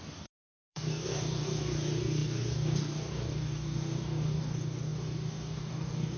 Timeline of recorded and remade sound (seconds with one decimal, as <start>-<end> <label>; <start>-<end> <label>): 0.0-6.2 remade